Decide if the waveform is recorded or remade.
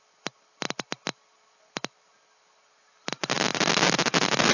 recorded